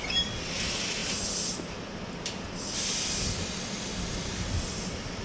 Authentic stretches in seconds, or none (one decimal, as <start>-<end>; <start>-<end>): 0.0-5.2